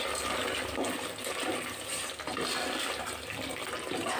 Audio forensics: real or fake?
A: real